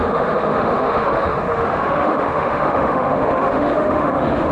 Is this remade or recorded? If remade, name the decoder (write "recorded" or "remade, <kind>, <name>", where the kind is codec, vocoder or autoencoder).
remade, autoencoder, DAC-VAE